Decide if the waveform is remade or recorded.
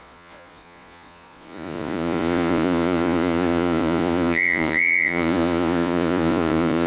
remade